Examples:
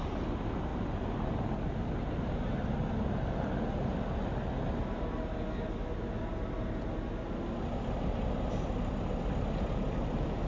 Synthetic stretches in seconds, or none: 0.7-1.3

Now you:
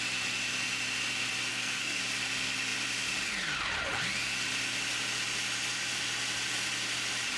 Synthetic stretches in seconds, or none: 1.5-2.0